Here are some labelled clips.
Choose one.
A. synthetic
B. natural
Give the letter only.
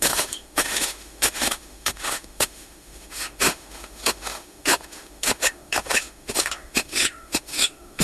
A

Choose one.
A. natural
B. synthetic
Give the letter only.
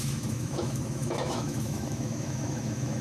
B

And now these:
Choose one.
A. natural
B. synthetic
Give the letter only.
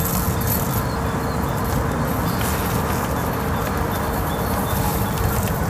A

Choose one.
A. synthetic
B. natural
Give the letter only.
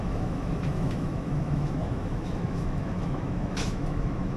A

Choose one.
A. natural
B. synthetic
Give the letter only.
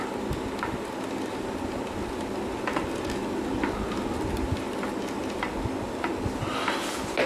A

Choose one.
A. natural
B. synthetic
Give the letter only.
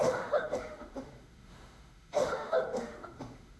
B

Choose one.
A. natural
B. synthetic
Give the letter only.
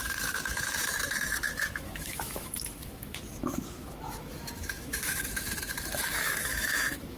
B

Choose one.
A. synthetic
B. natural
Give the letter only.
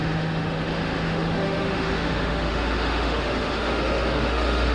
A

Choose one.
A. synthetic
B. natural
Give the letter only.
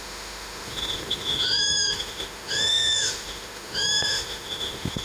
A